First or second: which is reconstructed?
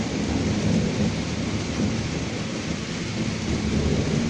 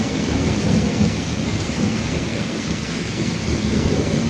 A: second